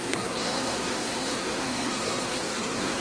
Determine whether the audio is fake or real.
fake